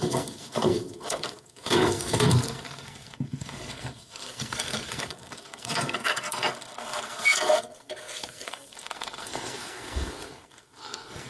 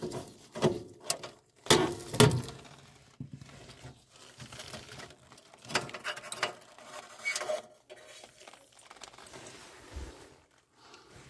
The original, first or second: second